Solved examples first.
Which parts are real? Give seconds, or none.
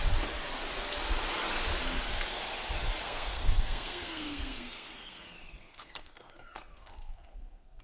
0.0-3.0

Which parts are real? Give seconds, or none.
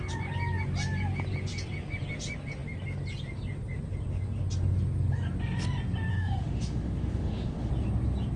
0.0-6.1; 7.7-8.4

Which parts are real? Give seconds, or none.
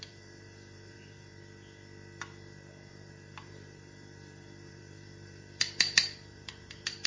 1.3-2.9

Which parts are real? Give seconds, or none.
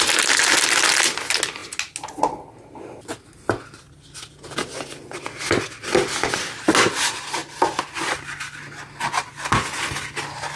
0.0-10.6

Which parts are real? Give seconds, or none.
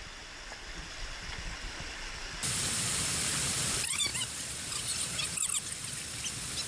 0.0-6.7